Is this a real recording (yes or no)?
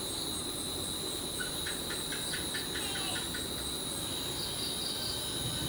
yes